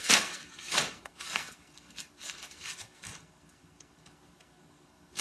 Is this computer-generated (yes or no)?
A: yes